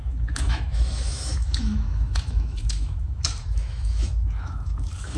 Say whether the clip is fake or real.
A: fake